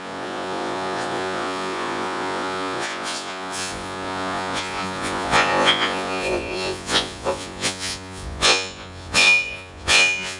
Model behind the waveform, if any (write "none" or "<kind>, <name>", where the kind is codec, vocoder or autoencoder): vocoder, Vocos